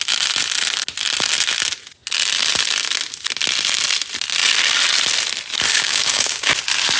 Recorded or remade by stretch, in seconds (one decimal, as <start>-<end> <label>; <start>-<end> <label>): 0.0-5.7 recorded; 5.7-6.5 remade; 6.5-7.0 recorded